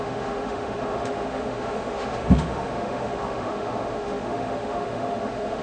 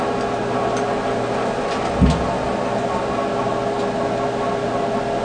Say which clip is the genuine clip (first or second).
second